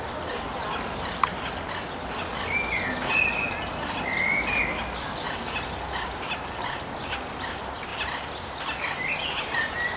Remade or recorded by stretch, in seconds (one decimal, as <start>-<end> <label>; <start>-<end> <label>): 0.0-7.9 recorded; 7.9-8.5 remade; 8.5-10.0 recorded